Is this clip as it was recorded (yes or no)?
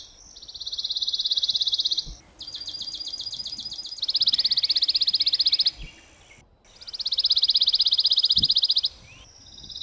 yes